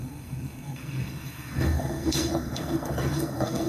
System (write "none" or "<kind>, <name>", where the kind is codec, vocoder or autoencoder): codec, SNAC